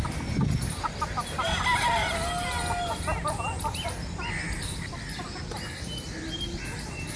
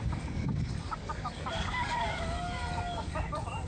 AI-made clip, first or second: second